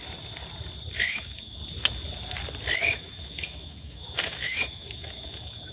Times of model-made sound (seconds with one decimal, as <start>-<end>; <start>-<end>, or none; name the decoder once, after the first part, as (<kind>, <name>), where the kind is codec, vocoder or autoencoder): 1.1-1.6 (autoencoder, DAC-VAE); 2.8-5.7